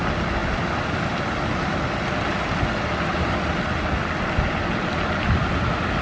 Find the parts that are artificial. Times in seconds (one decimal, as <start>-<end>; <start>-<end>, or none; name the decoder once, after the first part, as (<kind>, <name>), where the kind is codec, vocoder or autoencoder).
none